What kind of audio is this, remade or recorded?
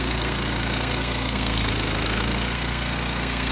remade